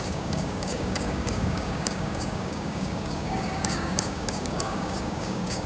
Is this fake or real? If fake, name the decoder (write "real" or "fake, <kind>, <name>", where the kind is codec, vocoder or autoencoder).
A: fake, codec, DAC